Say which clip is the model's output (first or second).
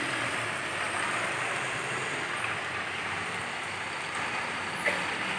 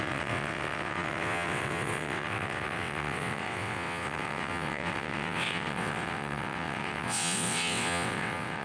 second